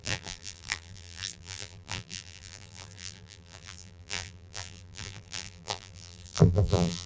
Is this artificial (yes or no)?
yes